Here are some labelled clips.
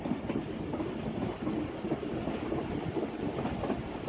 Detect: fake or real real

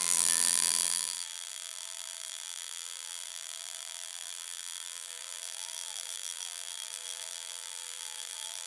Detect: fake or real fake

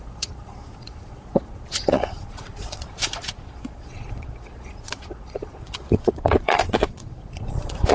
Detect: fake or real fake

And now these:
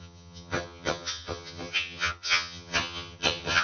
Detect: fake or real fake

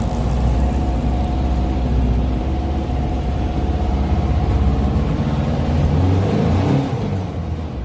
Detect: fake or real fake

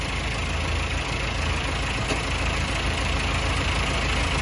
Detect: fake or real real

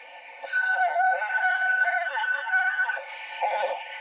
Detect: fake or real fake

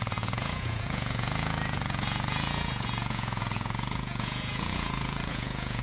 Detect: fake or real fake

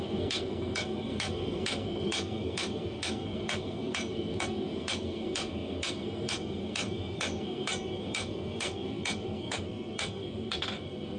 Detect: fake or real fake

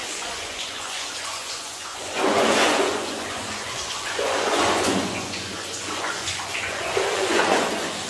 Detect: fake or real fake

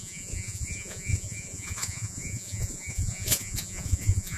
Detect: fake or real fake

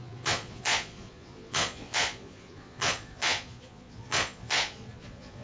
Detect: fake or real fake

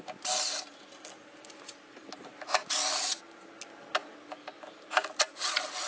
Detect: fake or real real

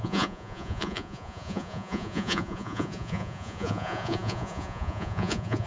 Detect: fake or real fake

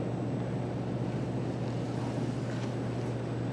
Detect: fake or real real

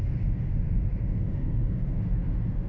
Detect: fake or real fake